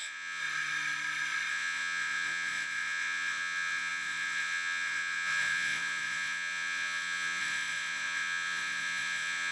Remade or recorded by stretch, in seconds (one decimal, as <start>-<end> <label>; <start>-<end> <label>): 0.0-0.4 remade; 0.4-1.5 recorded; 1.5-9.5 remade